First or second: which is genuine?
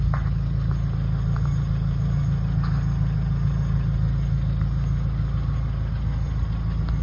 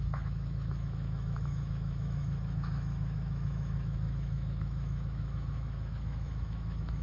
first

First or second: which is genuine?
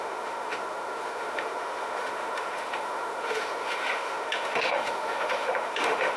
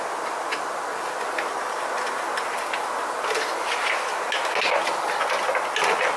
second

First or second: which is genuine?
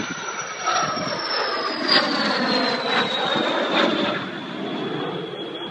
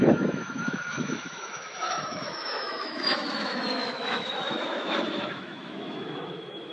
first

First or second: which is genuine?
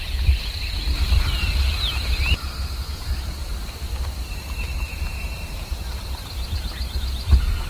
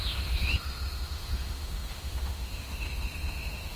first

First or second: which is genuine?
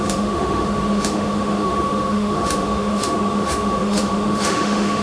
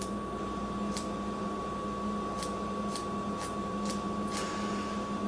second